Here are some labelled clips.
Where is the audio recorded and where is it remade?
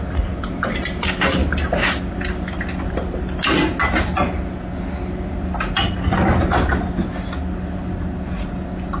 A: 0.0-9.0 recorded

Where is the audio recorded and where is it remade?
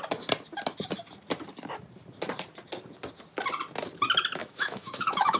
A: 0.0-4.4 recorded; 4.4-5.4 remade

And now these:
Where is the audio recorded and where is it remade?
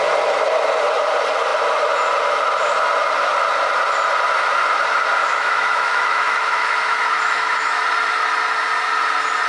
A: 0.0-5.2 recorded; 5.2-7.8 remade; 7.8-9.5 recorded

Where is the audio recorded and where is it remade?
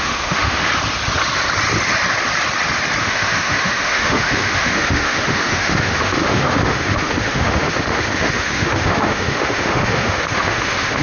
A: 0.0-0.7 remade; 0.7-3.0 recorded; 3.0-11.0 remade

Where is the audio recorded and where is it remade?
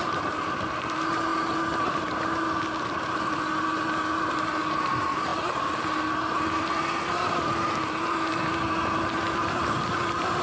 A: 0.0-10.4 recorded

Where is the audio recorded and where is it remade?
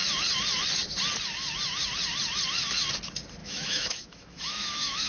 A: 0.0-3.4 recorded; 3.4-5.1 remade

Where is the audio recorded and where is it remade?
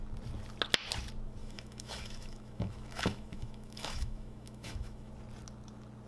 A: 0.0-1.4 recorded; 1.4-5.1 remade; 5.1-6.1 recorded